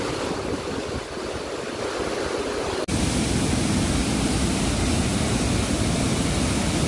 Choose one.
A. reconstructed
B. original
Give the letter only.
B